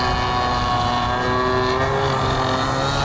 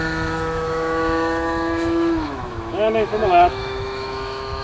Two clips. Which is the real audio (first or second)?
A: first